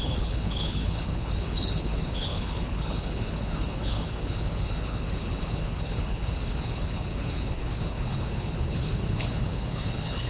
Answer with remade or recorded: remade